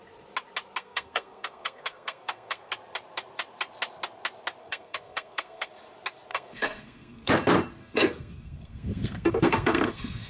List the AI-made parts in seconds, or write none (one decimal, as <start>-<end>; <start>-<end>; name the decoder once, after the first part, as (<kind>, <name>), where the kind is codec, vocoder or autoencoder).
0.8-2.7 (codec, SNAC); 4.6-5.7; 6.3-7.3; 7.8-10.3